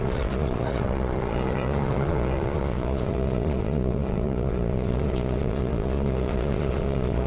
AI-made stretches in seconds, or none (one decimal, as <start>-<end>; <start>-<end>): 0.0-7.3